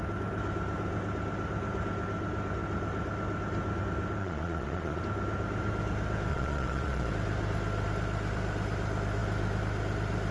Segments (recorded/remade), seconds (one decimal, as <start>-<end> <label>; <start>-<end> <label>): 0.0-4.2 recorded; 4.2-5.0 remade; 5.0-6.3 recorded; 6.3-7.1 remade; 7.1-10.3 recorded